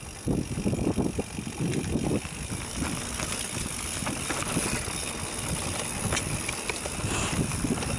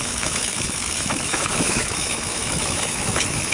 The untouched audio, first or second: first